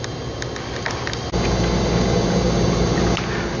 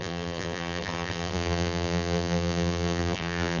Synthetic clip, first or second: second